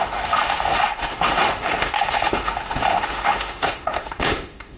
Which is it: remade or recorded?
remade